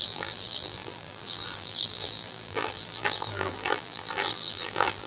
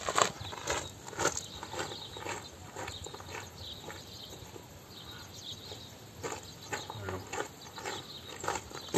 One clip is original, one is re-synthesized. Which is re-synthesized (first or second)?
first